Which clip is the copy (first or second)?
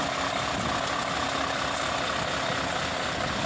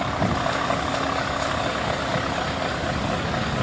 second